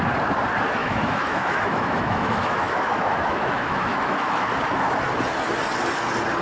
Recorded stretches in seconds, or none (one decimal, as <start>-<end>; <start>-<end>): 0.0-0.8; 4.6-6.4